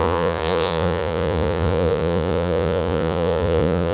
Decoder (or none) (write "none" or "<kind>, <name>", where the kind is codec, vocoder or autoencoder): vocoder, Vocos